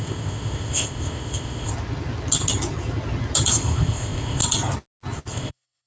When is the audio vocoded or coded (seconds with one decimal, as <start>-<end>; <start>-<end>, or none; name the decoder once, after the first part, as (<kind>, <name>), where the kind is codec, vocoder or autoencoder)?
0.0-1.7 (codec, ZipCodec); 3.5-4.4; 5.3-5.9